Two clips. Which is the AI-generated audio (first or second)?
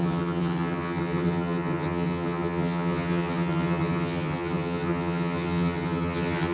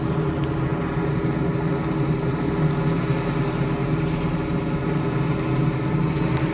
first